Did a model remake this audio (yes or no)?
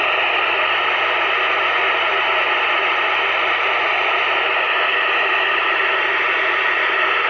no